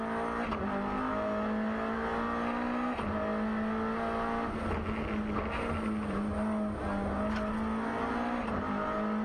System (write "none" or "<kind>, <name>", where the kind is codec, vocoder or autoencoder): none